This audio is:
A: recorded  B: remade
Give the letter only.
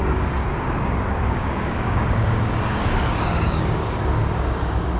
B